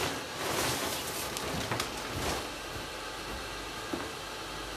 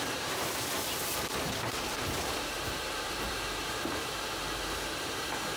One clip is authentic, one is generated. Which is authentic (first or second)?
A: first